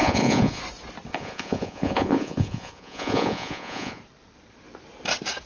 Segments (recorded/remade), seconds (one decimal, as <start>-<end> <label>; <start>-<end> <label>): 0.0-0.6 remade; 0.6-1.1 recorded; 1.1-4.0 remade; 4.0-5.5 recorded